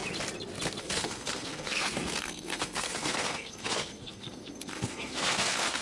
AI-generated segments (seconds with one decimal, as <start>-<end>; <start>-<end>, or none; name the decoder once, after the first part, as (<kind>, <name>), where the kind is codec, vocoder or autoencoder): 0.8-5.8 (codec, SNAC)